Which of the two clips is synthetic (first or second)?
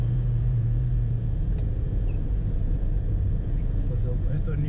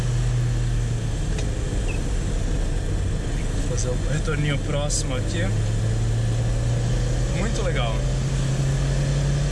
first